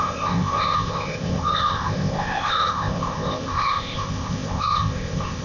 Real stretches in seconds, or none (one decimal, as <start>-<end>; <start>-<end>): none